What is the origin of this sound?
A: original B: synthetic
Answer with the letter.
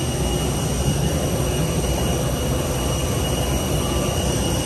A